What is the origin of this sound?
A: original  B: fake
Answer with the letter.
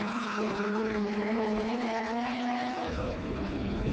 B